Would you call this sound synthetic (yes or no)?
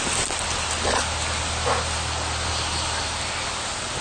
no